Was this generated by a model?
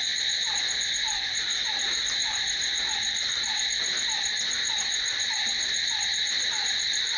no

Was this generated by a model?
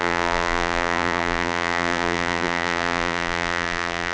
yes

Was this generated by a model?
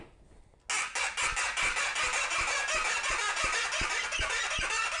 no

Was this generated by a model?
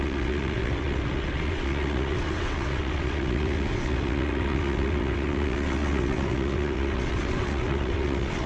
yes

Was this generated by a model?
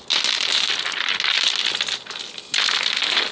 no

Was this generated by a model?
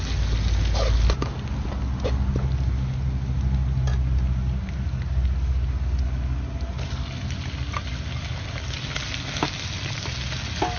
no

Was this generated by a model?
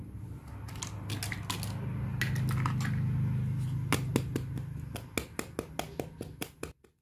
no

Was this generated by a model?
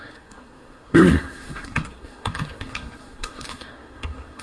yes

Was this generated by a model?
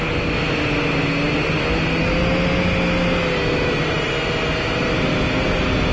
no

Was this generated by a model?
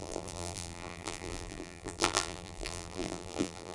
yes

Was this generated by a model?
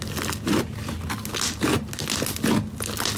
no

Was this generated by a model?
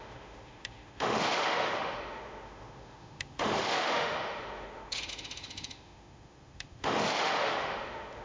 yes